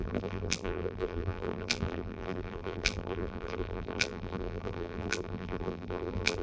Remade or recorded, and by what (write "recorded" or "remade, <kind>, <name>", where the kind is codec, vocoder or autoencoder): remade, vocoder, BigVGAN v2